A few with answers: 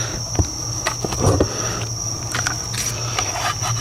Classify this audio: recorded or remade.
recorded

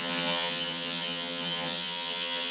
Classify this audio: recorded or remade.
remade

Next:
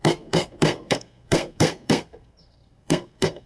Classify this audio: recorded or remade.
remade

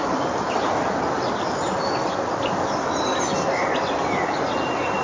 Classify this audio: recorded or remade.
recorded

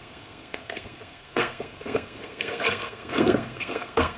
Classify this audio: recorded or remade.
remade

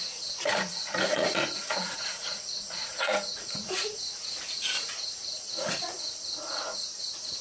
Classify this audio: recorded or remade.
remade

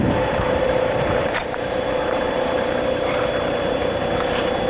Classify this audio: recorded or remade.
remade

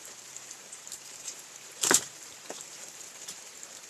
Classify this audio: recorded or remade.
remade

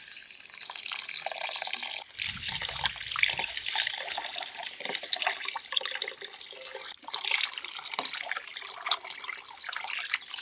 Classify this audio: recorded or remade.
recorded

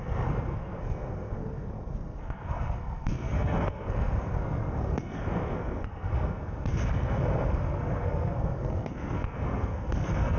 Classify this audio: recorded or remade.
remade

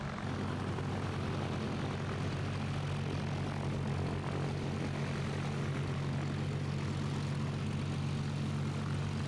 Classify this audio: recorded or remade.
recorded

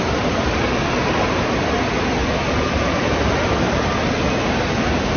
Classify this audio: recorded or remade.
recorded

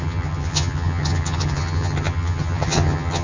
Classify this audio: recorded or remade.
remade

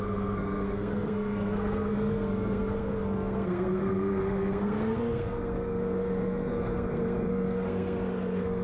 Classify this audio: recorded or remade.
remade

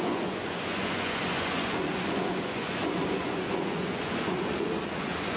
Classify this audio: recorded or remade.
remade